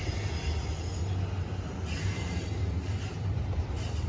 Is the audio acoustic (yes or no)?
yes